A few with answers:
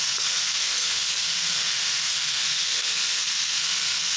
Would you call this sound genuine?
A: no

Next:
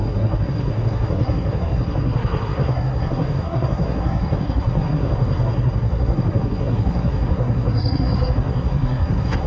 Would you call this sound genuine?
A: no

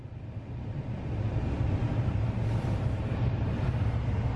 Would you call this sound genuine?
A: yes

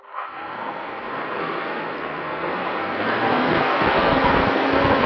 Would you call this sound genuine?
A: no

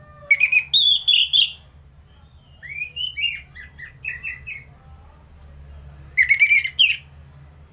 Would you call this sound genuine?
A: yes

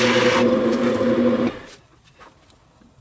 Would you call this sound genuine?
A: yes